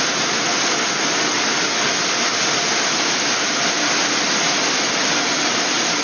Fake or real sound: real